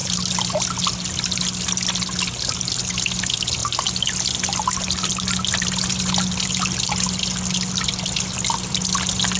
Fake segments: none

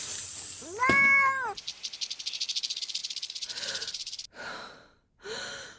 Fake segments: 3.0-5.1 (vocoder, BigVGAN v2)

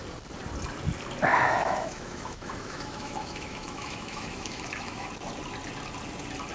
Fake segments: 1.3-5.1 (autoencoder, DAC-VAE)

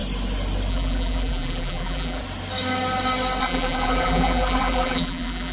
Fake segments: 0.7-2.2 (vocoder, BigVGAN v2); 3.4-5.5

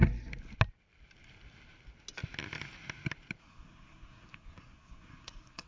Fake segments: 3.4-5.7 (codec, SNAC)